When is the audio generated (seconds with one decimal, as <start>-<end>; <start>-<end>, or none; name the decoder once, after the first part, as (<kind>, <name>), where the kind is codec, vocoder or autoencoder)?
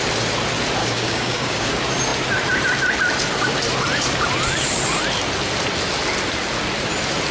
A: 0.8-1.7 (codec, DAC)